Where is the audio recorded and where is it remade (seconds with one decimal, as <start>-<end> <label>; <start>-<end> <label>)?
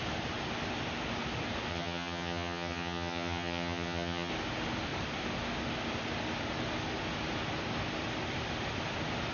0.0-1.7 recorded; 1.7-4.3 remade; 4.3-9.3 recorded